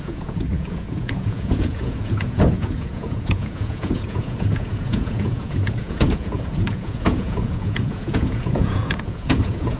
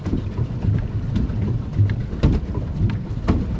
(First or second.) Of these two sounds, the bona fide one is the second